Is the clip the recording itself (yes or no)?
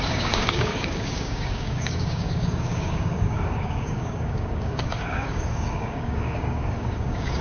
no